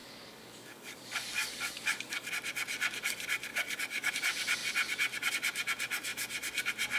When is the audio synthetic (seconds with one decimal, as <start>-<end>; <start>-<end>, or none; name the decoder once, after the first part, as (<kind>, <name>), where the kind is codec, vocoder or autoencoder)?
0.0-2.3 (codec, DAC); 3.5-4.1